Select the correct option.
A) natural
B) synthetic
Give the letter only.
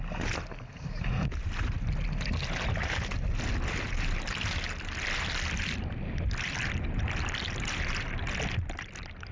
A